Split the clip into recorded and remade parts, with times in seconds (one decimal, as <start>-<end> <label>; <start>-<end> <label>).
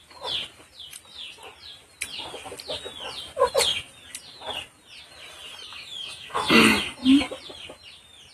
0.0-5.7 recorded; 5.7-6.5 remade; 6.5-8.3 recorded